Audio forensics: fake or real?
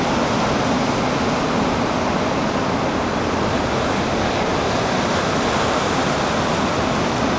real